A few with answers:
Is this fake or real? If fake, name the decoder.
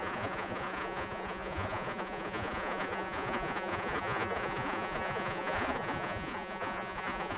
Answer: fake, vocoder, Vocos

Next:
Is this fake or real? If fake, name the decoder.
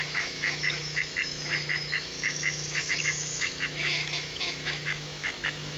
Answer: fake, autoencoder, DAC-VAE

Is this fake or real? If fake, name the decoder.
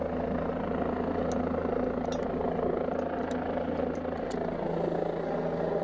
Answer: real